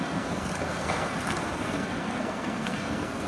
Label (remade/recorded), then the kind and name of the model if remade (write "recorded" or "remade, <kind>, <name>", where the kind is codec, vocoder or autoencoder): remade, codec, SNAC